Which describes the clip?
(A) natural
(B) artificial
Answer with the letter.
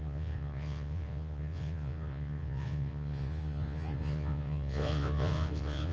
B